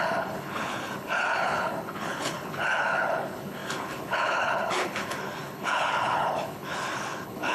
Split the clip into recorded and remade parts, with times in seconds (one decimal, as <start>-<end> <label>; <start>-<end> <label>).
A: 0.0-7.5 remade